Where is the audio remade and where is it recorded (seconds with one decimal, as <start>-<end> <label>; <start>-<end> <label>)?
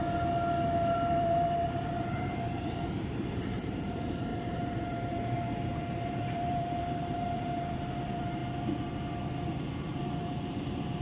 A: 0.0-0.9 recorded; 0.9-8.4 remade; 8.4-9.6 recorded; 9.6-11.0 remade